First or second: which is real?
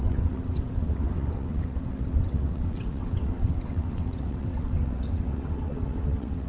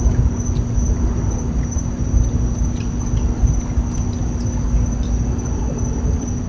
second